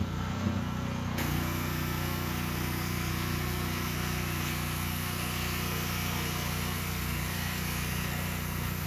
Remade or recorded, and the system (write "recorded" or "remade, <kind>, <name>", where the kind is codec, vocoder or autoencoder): remade, codec, SNAC